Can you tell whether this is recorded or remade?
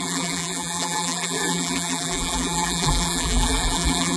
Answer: remade